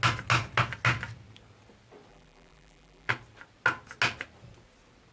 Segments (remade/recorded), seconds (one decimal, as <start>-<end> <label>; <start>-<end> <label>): 0.0-2.1 recorded; 2.1-3.1 remade; 3.1-5.1 recorded